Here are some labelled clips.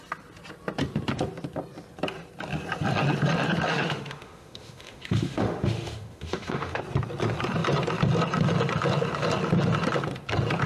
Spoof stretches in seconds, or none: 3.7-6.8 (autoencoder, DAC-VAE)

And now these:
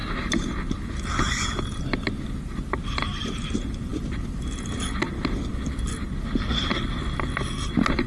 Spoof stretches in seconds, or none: none

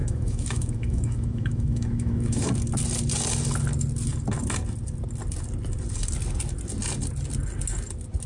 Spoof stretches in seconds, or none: 0.0-2.5 (autoencoder, DAC-VAE)

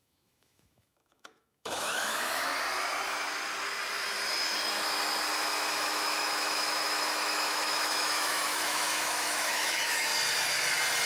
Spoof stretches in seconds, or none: 0.0-2.5 (autoencoder, DAC-VAE); 5.7-10.1

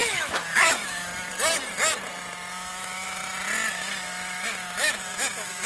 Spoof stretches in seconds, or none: 0.0-1.1 (autoencoder, DAC-VAE); 2.5-3.2; 3.7-5.7

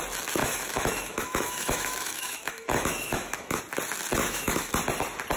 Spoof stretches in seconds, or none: 0.4-3.6 (autoencoder, DAC-VAE); 4.2-4.7

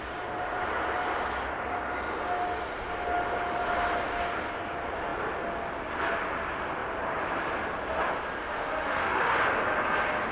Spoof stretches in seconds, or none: 8.4-9.4 (autoencoder, DAC-VAE)